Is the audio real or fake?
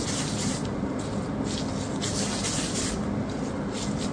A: real